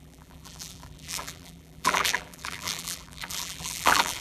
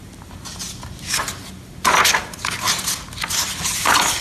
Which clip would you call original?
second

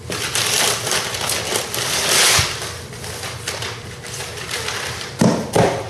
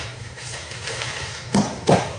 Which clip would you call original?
first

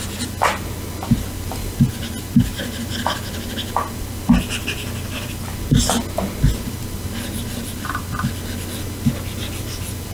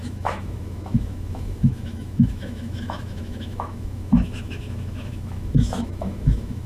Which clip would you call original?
first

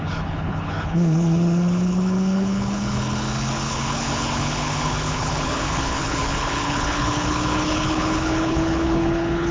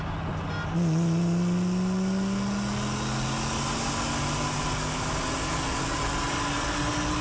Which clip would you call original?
second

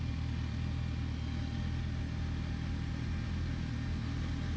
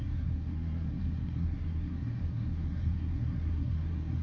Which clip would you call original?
first